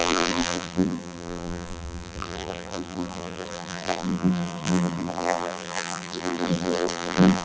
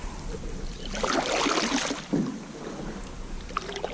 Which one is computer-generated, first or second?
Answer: first